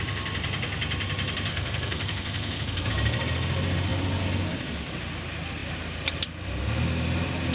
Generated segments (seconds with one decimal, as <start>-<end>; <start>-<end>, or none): 1.5-2.9